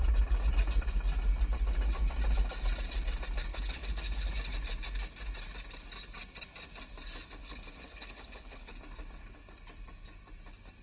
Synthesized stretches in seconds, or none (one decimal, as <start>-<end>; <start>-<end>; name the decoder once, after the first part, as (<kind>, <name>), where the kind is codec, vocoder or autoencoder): 3.5-4.3 (codec, HILCodec); 7.4-8.7